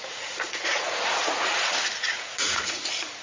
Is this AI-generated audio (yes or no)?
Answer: yes